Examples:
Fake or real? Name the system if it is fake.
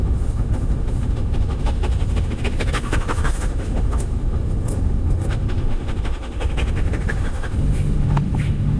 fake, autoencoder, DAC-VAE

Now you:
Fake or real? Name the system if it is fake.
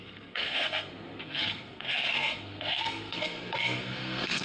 fake, codec, SNAC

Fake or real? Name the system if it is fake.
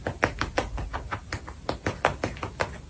real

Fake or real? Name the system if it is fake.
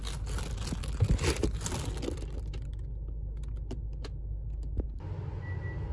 real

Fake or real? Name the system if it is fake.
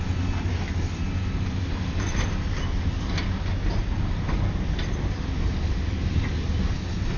real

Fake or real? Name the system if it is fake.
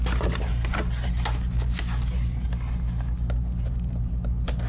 real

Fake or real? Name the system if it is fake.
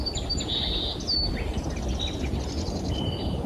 real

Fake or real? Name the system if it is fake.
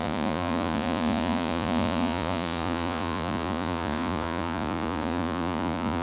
fake, vocoder, Vocos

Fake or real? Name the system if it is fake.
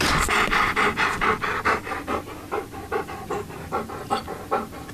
real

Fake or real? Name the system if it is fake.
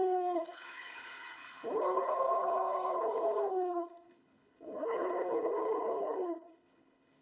fake, codec, HILCodec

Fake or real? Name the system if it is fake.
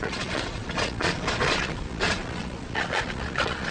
fake, vocoder, Vocos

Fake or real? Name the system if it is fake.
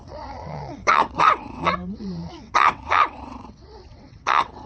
fake, vocoder, WaveNeXt